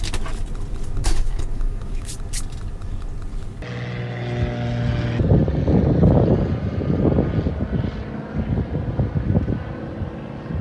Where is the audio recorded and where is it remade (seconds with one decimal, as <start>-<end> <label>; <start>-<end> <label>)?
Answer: 0.0-1.0 recorded; 1.0-2.1 remade; 2.1-10.6 recorded